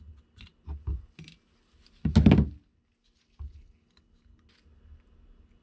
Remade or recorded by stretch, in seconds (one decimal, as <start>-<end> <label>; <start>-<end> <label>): 0.0-5.6 recorded